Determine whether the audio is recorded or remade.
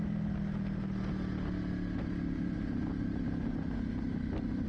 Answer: recorded